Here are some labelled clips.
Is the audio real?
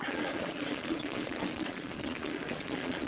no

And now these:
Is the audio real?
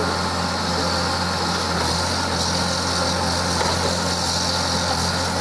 yes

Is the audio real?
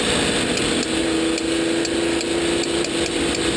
yes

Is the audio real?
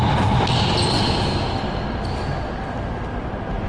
yes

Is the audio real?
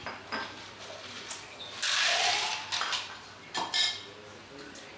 yes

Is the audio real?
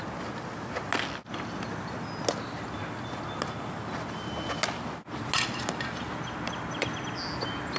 yes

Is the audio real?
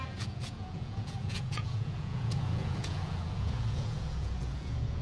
no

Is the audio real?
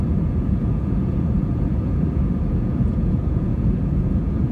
no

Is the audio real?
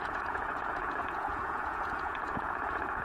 no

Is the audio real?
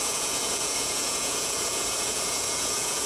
no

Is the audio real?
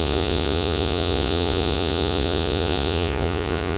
no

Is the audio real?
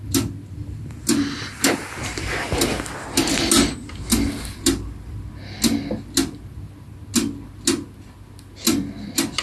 yes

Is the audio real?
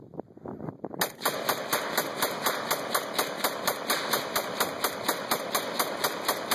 yes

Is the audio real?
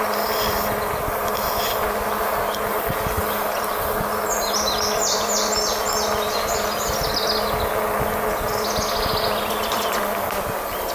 yes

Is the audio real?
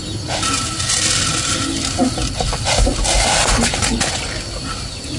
yes